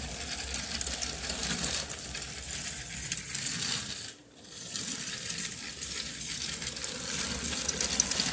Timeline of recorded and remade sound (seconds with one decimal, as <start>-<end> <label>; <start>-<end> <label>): 0.0-1.4 recorded; 1.4-2.2 remade; 2.2-4.2 recorded; 4.2-5.7 remade; 5.7-8.3 recorded